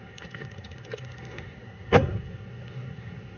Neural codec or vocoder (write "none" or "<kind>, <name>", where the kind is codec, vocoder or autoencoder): codec, SNAC